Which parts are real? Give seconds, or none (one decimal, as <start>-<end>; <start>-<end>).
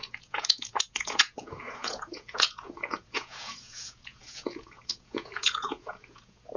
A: none